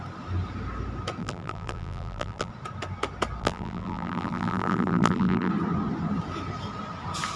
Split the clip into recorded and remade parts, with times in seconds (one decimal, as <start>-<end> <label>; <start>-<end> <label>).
0.0-1.2 recorded; 1.2-2.5 remade; 2.5-3.4 recorded; 3.4-5.5 remade; 5.5-7.4 recorded